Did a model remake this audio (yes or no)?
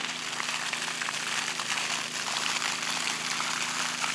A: no